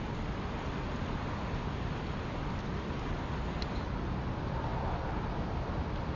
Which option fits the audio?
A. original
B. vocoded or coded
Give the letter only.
A